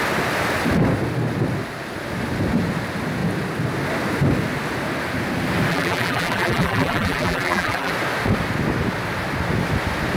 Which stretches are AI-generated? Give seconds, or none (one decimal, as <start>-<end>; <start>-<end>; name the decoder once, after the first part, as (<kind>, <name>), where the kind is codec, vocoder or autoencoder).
5.7-7.9 (vocoder, BigVGAN v2)